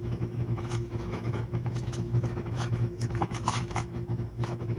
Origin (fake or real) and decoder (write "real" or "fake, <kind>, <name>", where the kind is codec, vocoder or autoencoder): fake, autoencoder, DAC-VAE